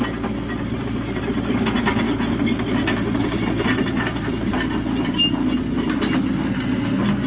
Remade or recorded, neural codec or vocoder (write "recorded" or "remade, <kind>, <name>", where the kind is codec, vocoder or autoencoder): recorded